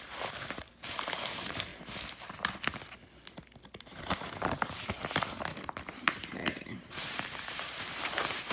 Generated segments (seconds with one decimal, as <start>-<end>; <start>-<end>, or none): 0.0-1.7; 5.9-8.5